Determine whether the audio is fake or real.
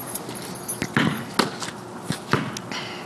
real